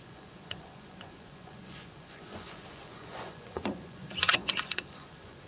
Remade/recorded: remade